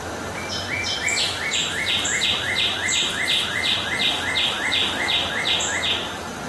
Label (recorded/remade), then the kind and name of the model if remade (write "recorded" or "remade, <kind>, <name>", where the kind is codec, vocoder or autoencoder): recorded